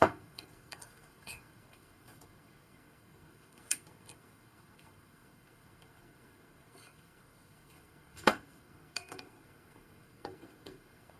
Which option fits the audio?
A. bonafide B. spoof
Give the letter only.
B